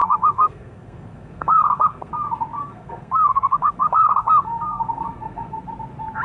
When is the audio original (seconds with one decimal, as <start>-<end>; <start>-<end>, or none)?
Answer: 2.1-2.6; 5.6-6.2